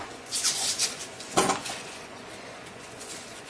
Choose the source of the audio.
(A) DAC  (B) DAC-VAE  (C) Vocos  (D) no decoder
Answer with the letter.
C